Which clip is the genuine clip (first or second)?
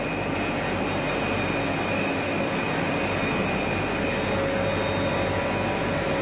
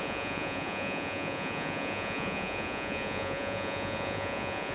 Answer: first